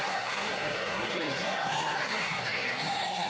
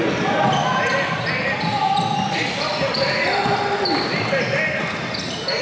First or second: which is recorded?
second